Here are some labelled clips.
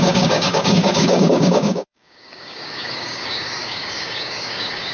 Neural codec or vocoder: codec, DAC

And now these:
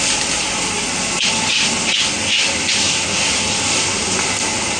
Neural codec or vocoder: none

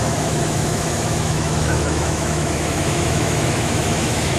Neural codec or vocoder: autoencoder, DAC-VAE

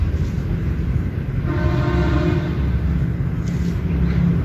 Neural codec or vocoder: none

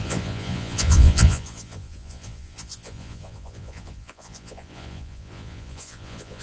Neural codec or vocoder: vocoder, Vocos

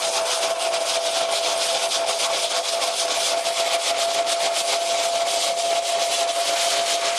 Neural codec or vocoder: none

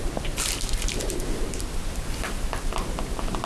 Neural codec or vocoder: none